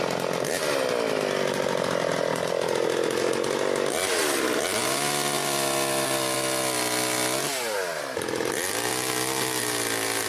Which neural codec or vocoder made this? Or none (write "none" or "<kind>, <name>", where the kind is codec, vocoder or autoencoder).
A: none